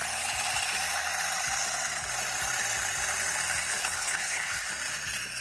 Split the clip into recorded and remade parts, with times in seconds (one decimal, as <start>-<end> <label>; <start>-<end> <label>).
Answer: 0.0-3.8 recorded; 3.8-4.7 remade; 4.7-5.4 recorded